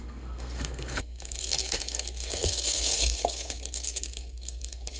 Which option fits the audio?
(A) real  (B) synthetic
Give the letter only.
B